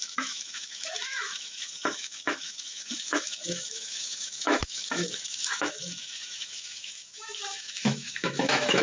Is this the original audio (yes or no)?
no